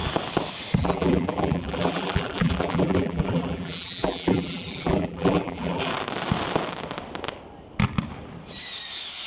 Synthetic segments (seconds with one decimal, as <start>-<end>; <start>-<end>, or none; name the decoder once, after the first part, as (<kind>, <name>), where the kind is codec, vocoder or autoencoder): 0.8-5.9 (vocoder, BigVGAN v2)